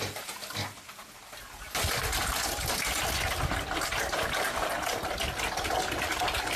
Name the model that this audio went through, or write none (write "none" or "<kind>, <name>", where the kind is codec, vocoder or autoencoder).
none